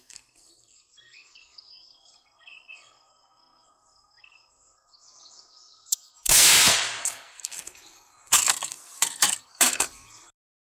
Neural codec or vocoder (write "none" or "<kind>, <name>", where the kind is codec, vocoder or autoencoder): codec, SNAC